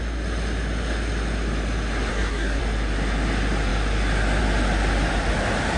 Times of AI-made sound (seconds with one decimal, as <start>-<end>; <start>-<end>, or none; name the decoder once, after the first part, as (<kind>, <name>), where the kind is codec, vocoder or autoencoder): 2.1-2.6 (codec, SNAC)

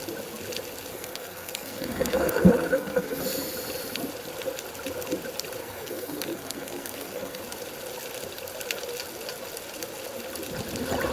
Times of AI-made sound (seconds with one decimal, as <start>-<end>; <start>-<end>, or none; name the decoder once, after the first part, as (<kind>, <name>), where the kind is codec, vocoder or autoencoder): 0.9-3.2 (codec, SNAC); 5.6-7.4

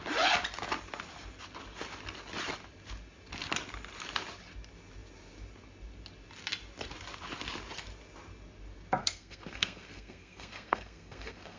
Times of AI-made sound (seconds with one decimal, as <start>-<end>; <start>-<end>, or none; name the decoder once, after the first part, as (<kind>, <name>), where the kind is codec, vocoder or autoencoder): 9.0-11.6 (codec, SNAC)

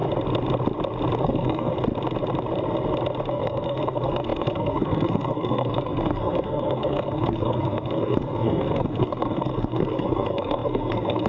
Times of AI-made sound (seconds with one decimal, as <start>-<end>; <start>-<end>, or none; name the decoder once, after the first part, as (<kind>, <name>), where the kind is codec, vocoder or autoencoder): 1.2-1.7 (codec, SNAC); 3.3-11.3